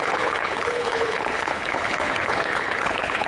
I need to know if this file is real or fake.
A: fake